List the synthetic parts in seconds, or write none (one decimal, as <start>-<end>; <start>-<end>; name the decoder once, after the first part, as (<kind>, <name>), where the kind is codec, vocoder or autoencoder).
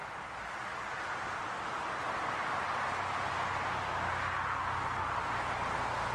none